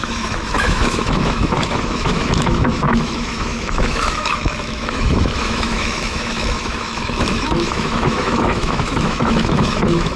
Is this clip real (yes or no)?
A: no